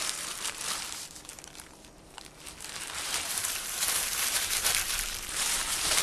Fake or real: fake